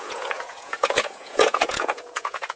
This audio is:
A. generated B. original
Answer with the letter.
A